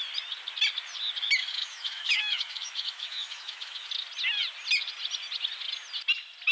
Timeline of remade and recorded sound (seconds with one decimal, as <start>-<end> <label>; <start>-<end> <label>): 0.0-1.4 recorded; 1.4-3.9 remade; 3.9-6.5 recorded